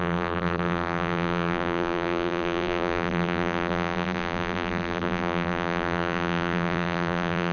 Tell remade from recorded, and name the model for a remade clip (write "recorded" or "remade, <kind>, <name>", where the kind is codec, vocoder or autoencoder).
remade, vocoder, BigVGAN v2